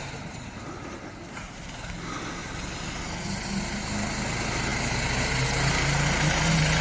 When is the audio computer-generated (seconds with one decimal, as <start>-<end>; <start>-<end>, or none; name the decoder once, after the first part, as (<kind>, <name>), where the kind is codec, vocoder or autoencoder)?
2.4-3.0 (vocoder, BigVGAN v2)